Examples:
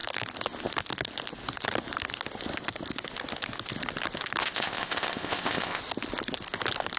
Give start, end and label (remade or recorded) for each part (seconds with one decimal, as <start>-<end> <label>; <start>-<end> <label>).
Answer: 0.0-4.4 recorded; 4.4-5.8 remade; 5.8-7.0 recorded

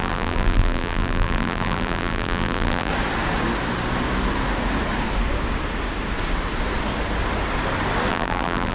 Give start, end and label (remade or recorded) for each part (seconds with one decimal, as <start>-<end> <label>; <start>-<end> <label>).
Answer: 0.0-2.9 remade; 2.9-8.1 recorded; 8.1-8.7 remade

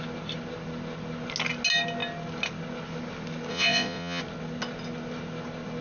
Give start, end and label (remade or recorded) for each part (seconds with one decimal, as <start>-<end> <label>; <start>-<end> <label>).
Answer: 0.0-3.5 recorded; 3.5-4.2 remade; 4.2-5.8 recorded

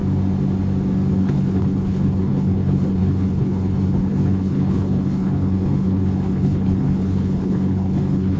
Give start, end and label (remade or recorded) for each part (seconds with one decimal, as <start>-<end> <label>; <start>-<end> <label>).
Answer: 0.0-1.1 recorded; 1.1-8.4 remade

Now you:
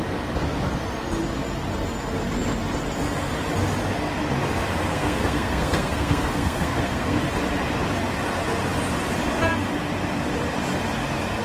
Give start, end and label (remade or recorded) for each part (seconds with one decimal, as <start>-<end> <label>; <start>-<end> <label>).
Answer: 0.0-4.9 recorded; 4.9-7.2 remade; 7.2-11.4 recorded

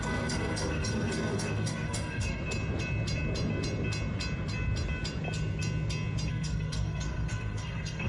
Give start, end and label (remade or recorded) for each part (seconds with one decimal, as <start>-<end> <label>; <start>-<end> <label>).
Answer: 0.0-2.4 remade; 2.4-6.3 recorded; 6.3-8.1 remade

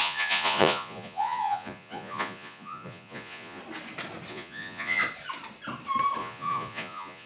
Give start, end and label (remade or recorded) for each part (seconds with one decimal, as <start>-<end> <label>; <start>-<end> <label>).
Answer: 0.0-3.6 remade; 3.6-4.3 recorded; 4.3-5.0 remade; 5.0-6.2 recorded; 6.2-7.3 remade

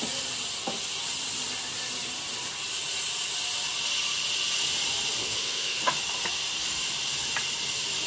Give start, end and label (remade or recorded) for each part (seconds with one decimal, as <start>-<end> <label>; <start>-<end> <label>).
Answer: 0.0-5.2 recorded; 5.2-5.8 remade; 5.8-8.1 recorded